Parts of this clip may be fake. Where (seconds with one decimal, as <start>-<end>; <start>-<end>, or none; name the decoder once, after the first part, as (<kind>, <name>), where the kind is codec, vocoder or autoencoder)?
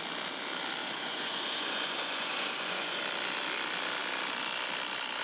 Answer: 0.8-3.0 (vocoder, Vocos)